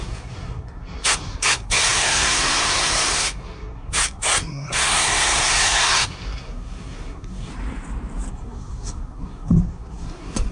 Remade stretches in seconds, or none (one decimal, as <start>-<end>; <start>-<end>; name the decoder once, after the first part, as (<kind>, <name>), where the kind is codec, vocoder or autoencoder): 0.0-7.5 (codec, SNAC); 8.3-10.5